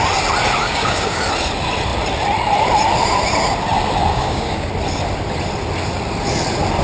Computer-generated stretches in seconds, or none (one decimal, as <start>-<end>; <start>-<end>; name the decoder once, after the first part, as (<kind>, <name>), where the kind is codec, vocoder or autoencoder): 0.6-1.2 (codec, DAC); 4.1-4.7

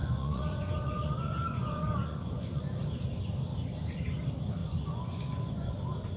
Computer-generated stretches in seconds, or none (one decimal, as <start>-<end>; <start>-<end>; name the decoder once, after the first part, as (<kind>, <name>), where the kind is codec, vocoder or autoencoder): 0.0-2.6 (vocoder, Vocos); 4.6-5.8

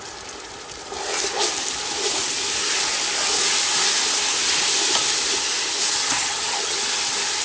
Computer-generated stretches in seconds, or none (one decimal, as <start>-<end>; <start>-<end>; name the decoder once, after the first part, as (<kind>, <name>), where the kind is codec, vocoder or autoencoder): 6.0-6.8 (vocoder, HiFi-GAN)

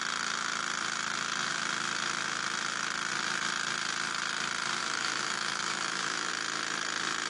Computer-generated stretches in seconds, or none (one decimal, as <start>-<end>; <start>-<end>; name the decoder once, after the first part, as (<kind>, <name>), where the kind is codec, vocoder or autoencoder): 4.8-6.3 (autoencoder, DAC-VAE)

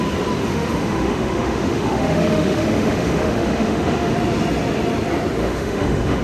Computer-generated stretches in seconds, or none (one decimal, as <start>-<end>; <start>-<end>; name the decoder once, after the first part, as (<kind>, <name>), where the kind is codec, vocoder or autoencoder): 0.4-4.1 (autoencoder, DAC-VAE); 5.4-6.2

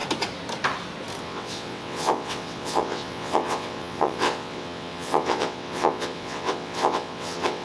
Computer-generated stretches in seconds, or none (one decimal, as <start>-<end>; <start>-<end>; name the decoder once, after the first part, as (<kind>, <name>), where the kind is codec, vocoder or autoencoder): 1.2-7.6 (vocoder, WaveNeXt)

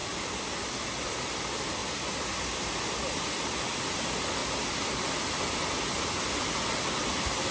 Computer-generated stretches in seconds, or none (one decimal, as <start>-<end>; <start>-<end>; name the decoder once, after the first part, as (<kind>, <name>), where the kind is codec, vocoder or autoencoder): 0.0-1.2 (vocoder, BigVGAN v2); 1.8-2.8; 4.4-6.5